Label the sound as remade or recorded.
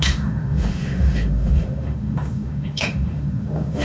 remade